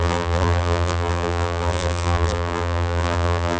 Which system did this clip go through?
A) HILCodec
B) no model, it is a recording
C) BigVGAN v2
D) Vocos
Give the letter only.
C